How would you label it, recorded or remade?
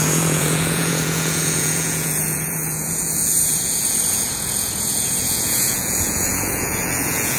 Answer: remade